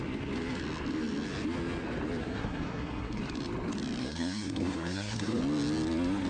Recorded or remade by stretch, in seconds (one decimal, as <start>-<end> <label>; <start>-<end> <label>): 0.0-2.2 recorded; 2.2-3.2 remade; 3.2-4.0 recorded; 4.0-5.4 remade; 5.4-6.3 recorded